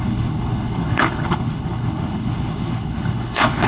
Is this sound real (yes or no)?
no